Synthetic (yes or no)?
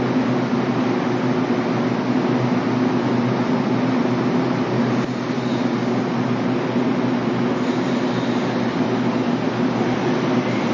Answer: no